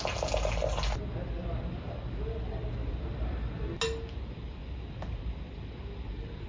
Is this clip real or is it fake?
real